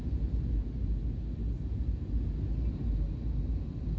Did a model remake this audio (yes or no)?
no